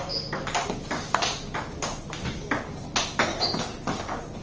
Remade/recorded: recorded